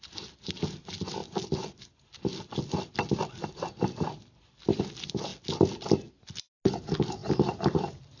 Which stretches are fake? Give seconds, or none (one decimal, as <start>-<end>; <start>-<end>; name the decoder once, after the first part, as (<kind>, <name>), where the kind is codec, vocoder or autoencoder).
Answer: none